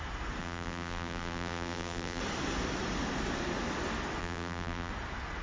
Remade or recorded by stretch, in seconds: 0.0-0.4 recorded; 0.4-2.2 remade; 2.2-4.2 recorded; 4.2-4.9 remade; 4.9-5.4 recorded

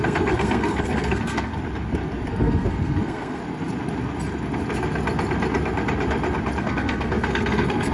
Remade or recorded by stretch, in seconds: 0.0-1.5 remade; 1.5-2.3 recorded; 2.3-3.4 remade; 3.4-6.6 recorded; 6.6-7.9 remade

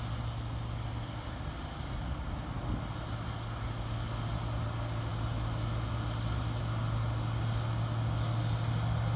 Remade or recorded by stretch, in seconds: 0.0-9.2 recorded

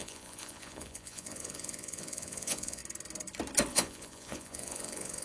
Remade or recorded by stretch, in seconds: 0.0-2.8 remade; 2.8-3.7 recorded; 3.7-5.2 remade